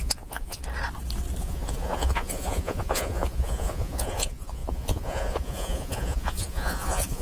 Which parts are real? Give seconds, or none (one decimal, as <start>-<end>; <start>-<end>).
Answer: 0.6-1.4